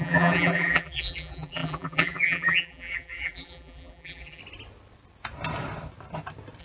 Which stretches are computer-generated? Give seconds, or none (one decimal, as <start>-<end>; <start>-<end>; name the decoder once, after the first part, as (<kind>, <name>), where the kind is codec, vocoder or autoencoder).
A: 0.0-4.4 (vocoder, BigVGAN v2)